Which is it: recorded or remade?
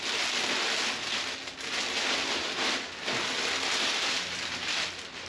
recorded